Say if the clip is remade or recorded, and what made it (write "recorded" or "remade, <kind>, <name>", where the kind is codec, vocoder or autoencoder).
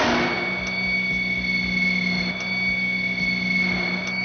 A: recorded